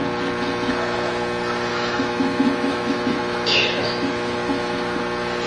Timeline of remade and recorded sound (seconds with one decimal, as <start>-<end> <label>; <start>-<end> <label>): 0.0-1.7 recorded; 1.7-5.0 remade; 5.0-5.5 recorded